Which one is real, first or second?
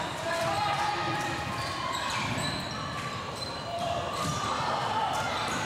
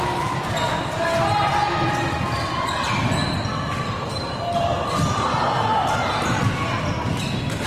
second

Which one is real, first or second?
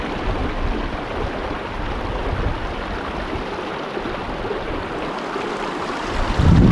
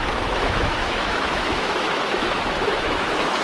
first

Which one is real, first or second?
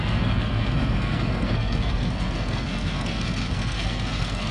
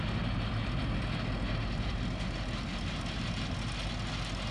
second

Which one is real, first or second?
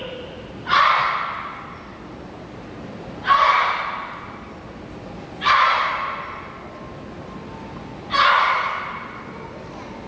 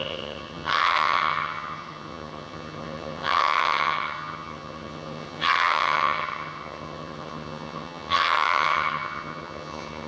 first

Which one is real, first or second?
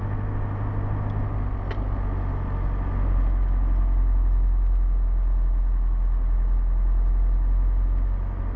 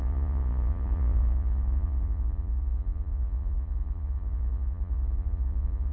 first